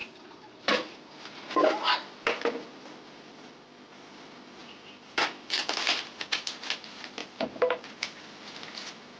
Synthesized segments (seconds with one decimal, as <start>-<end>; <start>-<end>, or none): 0.0-3.3; 4.6-5.7; 7.2-7.8